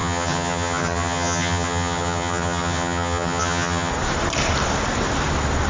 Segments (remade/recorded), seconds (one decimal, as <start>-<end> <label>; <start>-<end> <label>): 0.0-3.9 remade; 3.9-5.7 recorded